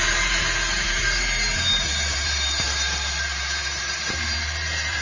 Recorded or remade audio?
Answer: remade